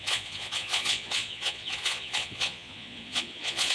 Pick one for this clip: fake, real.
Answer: fake